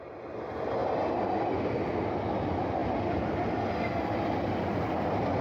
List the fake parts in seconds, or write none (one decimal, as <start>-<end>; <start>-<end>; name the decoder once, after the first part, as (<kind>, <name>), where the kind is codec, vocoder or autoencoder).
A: none